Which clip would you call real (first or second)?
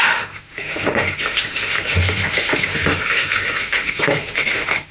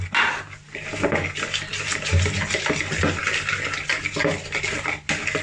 second